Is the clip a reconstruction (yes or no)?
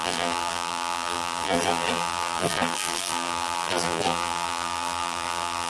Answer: yes